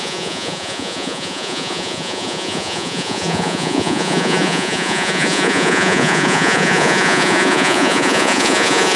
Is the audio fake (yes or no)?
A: yes